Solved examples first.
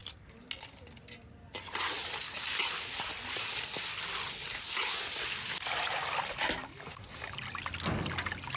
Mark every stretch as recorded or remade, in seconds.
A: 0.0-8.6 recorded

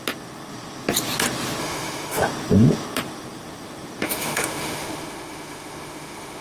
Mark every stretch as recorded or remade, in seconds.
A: 0.0-1.6 recorded; 1.6-2.2 remade; 2.2-4.0 recorded; 4.0-6.4 remade

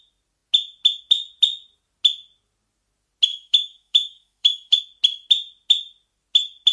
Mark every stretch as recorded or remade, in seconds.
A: 0.0-3.3 recorded; 3.3-4.8 remade; 4.8-6.7 recorded